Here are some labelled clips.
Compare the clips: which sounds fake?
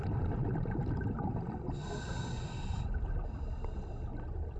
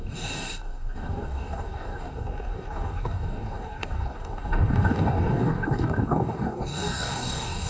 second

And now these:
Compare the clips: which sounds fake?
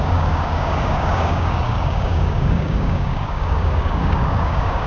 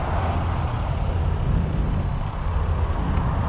first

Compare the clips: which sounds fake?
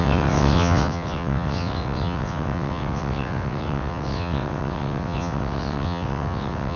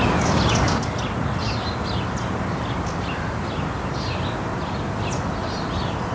first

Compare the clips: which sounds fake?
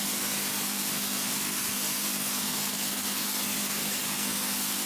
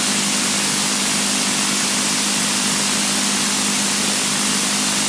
first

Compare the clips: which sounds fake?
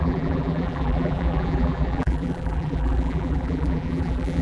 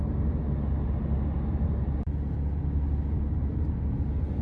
first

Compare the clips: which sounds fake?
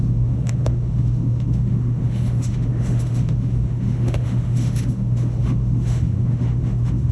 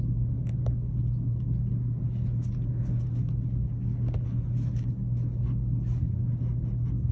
first